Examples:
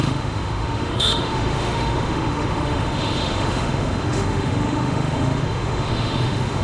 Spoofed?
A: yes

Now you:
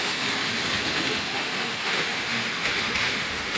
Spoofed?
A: yes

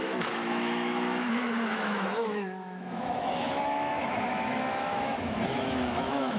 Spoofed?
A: yes